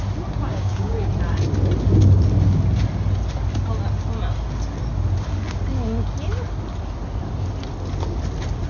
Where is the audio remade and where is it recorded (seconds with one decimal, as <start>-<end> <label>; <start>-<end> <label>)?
0.0-0.5 recorded; 0.5-1.1 remade; 1.1-8.7 recorded